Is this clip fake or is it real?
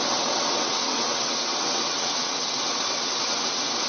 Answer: fake